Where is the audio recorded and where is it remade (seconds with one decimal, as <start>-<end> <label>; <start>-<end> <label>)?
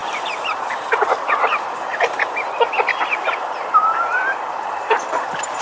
0.0-0.7 recorded; 0.7-1.9 remade; 1.9-4.5 recorded; 4.5-5.6 remade